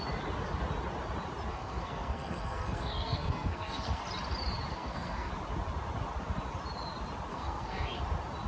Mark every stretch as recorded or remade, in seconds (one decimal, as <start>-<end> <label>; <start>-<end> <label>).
0.0-1.5 recorded; 1.5-4.0 remade; 4.0-4.7 recorded; 4.7-5.3 remade; 5.3-7.3 recorded; 7.3-8.0 remade; 8.0-8.5 recorded